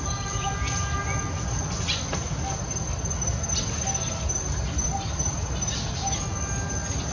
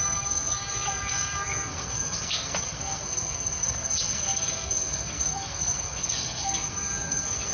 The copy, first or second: second